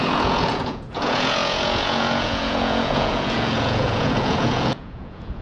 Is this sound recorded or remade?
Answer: remade